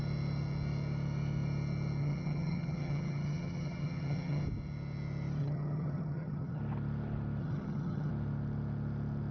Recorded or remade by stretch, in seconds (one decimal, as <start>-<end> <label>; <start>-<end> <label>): 0.0-2.0 recorded; 2.0-4.4 remade; 4.4-5.4 recorded; 5.4-6.6 remade; 6.6-7.4 recorded; 7.4-8.1 remade; 8.1-9.3 recorded